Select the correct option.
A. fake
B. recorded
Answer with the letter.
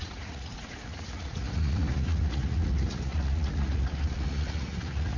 A